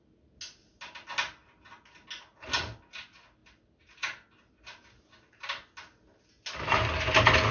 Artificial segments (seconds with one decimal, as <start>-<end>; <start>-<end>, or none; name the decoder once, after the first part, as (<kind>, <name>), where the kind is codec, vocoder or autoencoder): none